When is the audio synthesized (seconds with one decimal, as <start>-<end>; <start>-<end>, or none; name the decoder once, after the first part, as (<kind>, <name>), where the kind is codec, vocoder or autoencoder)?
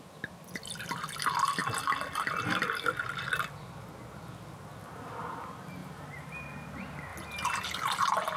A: 5.8-6.4 (vocoder, BigVGAN v2)